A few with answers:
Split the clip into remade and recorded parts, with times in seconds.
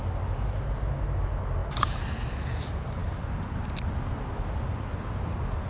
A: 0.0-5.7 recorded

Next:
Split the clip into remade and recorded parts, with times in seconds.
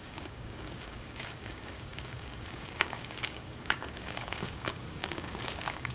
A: 0.0-5.9 remade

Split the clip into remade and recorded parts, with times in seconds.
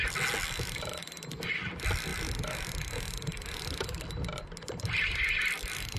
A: 0.0-6.0 recorded